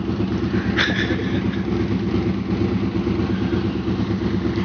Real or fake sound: real